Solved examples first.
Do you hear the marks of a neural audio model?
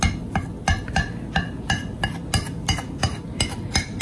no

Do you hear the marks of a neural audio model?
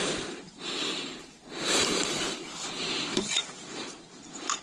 yes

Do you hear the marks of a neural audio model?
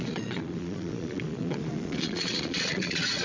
yes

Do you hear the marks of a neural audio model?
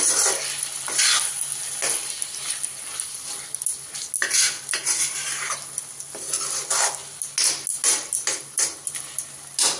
no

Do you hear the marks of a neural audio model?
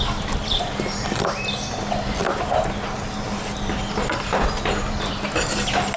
no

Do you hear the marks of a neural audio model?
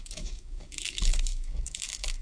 yes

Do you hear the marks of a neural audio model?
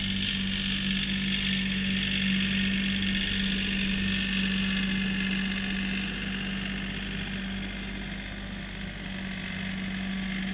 no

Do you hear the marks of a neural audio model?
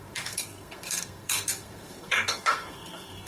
yes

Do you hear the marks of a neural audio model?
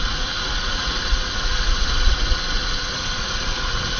yes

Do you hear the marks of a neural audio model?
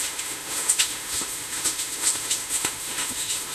yes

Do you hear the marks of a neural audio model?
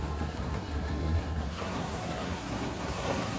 yes